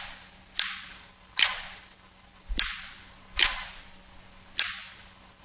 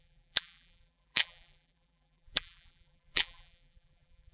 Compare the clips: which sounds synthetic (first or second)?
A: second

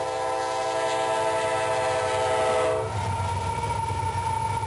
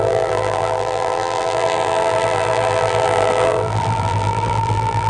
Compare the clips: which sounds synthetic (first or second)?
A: second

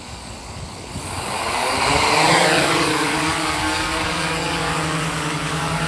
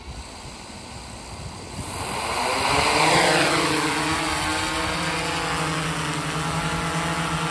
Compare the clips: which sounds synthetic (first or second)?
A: first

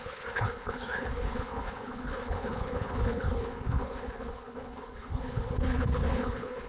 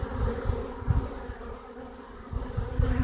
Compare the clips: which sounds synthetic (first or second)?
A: first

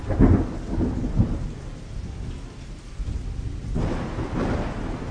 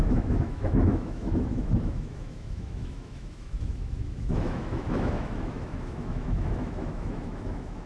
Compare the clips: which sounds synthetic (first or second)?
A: second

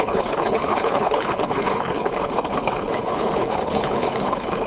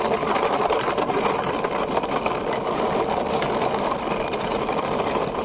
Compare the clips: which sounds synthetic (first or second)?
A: first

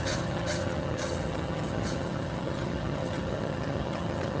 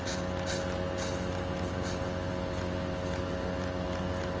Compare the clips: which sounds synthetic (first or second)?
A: first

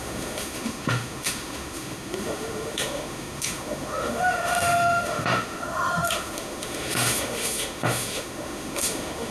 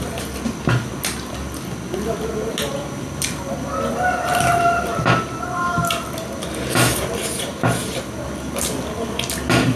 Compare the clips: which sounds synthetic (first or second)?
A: first